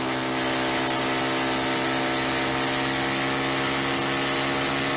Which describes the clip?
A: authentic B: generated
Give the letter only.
A